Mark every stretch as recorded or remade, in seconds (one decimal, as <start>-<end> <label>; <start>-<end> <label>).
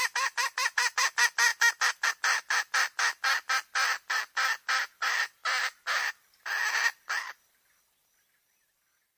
0.0-9.2 recorded